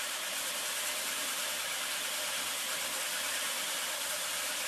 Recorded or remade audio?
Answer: remade